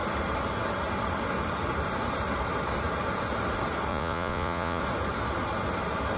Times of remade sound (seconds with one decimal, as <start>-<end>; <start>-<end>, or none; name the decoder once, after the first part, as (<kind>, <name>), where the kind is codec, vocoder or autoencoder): 3.9-4.8 (vocoder, Vocos)